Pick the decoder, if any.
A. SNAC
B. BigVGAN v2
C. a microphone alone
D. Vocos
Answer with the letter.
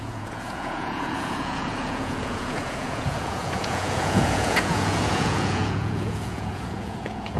D